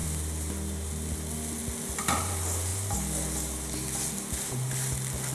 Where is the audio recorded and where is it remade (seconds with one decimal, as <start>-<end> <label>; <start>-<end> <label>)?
0.0-1.6 recorded; 1.6-2.7 remade; 2.7-4.1 recorded; 4.1-5.3 remade